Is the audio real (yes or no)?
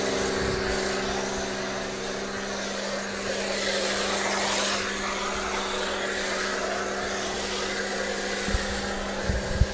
yes